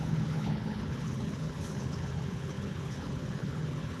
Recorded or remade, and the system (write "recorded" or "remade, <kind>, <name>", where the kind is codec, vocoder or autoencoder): remade, codec, HILCodec